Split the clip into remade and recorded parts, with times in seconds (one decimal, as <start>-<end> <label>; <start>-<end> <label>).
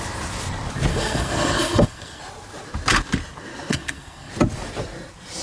0.0-0.9 recorded; 0.9-2.2 remade; 2.2-3.7 recorded; 3.7-4.3 remade; 4.3-5.4 recorded